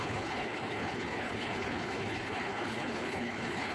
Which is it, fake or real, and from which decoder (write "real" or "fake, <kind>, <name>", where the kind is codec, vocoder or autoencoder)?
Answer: fake, codec, HILCodec